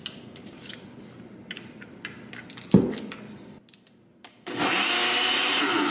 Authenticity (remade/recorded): recorded